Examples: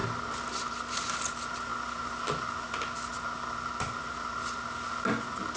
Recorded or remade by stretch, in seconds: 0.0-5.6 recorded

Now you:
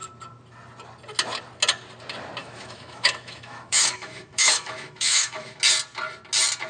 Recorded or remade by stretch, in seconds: 0.0-2.4 recorded; 2.4-5.6 remade; 5.6-6.7 recorded

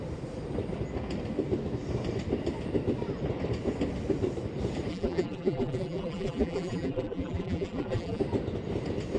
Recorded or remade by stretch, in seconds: 0.0-4.9 recorded; 4.9-8.2 remade; 8.2-9.2 recorded

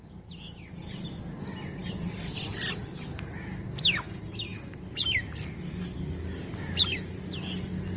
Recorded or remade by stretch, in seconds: 0.0-8.0 recorded

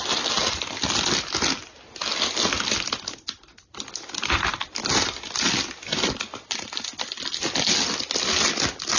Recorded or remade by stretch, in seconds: 0.0-6.3 recorded; 6.3-7.2 remade; 7.2-9.0 recorded

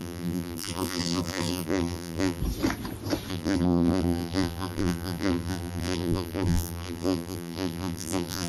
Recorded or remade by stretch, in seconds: 0.0-2.4 remade; 2.4-3.3 recorded; 3.3-8.5 remade